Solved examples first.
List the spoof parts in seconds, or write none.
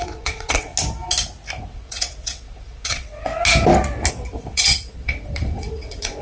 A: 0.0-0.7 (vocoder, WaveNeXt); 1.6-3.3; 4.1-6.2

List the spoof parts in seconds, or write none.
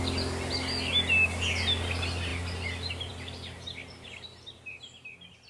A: none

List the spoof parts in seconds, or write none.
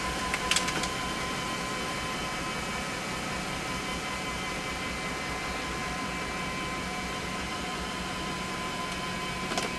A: none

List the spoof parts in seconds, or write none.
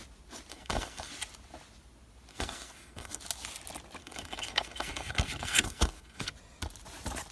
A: 0.5-1.1 (codec, SNAC); 2.3-3.2; 4.0-6.3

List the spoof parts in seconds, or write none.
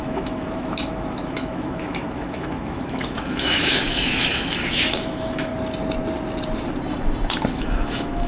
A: 0.0-5.5 (autoencoder, DAC-VAE); 7.5-8.3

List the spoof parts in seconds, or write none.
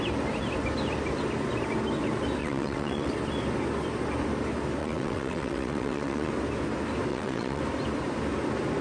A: 2.4-3.1 (vocoder, WaveNeXt); 4.8-6.3; 7.1-7.6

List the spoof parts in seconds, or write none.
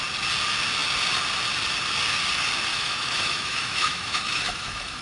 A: 2.7-5.0 (autoencoder, DAC-VAE)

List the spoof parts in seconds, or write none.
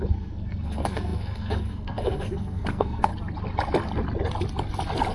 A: 0.0-3.1 (codec, SNAC)